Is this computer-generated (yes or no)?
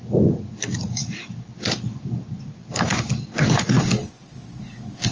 no